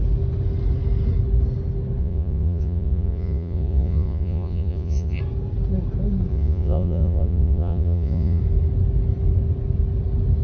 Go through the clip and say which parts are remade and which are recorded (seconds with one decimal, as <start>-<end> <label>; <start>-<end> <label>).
0.0-2.0 recorded; 2.0-5.2 remade; 5.2-6.3 recorded; 6.3-8.4 remade; 8.4-10.4 recorded